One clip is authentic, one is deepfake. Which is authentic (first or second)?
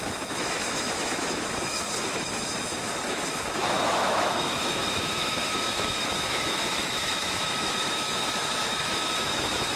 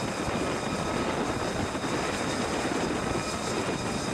second